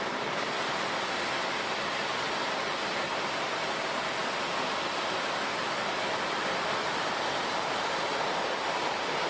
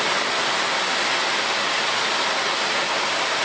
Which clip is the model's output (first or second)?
first